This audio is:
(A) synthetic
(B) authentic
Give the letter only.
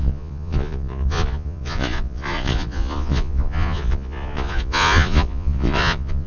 A